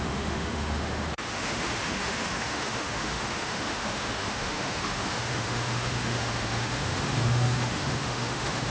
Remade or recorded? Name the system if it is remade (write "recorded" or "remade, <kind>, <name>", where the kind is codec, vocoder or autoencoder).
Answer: remade, autoencoder, DAC-VAE